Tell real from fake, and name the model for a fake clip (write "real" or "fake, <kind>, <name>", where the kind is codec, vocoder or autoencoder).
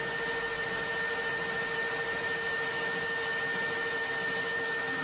real